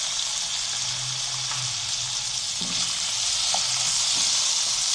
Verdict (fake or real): real